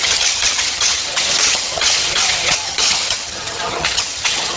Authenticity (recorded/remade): remade